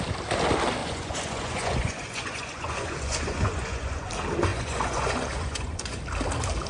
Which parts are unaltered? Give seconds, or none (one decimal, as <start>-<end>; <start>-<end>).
0.0-0.8; 4.1-4.5; 6.0-6.7